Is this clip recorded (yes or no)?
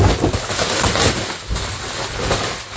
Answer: yes